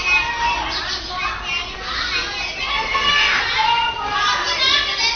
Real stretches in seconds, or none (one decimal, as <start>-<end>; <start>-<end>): 0.0-2.7; 3.4-5.2